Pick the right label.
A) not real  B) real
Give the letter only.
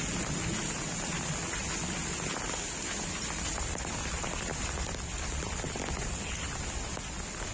B